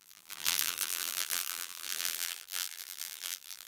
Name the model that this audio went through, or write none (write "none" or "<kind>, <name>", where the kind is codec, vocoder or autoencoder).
vocoder, BigVGAN v2